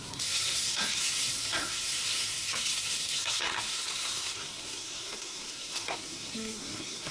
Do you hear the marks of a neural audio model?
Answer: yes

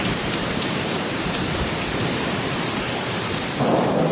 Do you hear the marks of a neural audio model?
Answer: yes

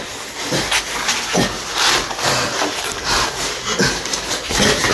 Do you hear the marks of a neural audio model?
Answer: no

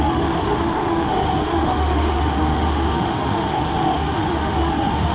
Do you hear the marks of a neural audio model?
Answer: yes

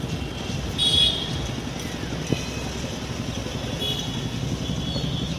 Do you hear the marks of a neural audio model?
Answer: no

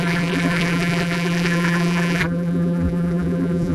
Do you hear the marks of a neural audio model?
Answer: yes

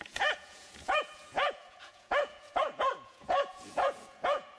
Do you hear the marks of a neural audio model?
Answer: yes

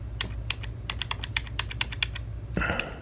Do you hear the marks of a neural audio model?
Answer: no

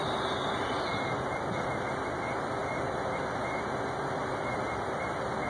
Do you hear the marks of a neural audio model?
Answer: yes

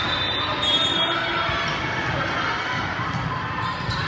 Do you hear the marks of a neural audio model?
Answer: no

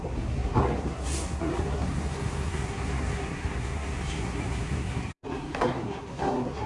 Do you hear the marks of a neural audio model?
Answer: yes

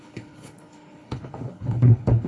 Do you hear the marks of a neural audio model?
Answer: yes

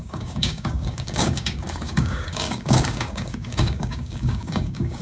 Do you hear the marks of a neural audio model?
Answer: yes